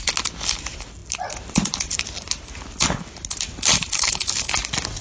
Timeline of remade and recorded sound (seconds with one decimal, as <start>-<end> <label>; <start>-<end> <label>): 0.0-3.7 recorded; 3.7-4.5 remade; 4.5-5.0 recorded